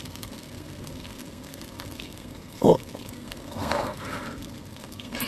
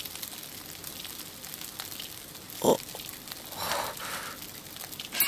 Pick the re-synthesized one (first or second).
first